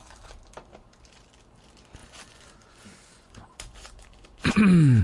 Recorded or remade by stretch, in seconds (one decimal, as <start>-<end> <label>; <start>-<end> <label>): 0.0-2.0 recorded; 2.0-5.0 remade